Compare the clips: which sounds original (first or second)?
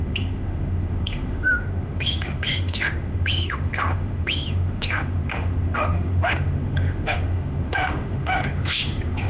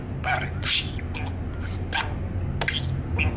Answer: second